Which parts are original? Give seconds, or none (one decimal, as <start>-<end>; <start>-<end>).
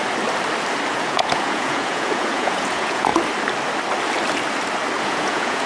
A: 0.0-0.9; 3.1-5.0